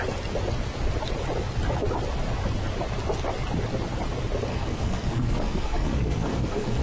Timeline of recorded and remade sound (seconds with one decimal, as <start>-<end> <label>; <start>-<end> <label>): 0.0-4.5 recorded; 4.5-6.8 remade